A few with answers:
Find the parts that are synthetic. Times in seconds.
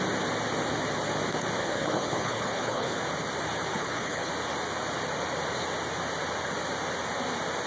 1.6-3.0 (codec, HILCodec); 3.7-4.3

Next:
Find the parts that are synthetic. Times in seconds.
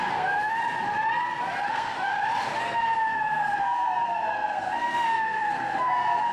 0.0-0.6 (codec, SNAC); 1.7-2.1; 2.6-6.3